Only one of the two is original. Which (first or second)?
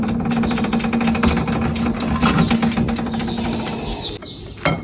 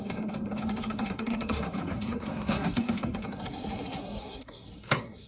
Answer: first